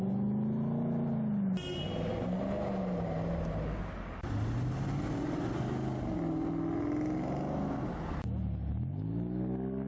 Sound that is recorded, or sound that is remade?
recorded